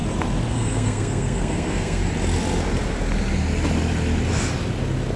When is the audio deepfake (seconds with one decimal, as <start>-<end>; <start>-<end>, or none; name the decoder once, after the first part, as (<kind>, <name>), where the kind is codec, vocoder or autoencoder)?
0.5-2.0 (codec, SNAC)